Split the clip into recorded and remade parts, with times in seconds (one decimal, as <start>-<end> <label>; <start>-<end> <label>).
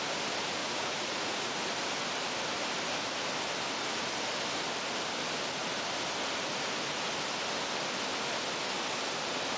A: 0.0-0.6 recorded; 0.6-1.6 remade; 1.6-9.6 recorded